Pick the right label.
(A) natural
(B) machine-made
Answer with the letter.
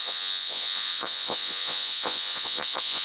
B